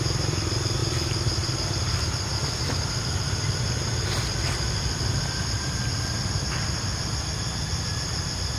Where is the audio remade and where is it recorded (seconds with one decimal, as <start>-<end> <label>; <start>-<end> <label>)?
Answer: 0.0-8.6 recorded